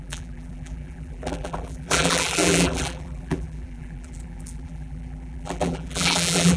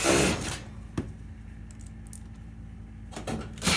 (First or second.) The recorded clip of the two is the second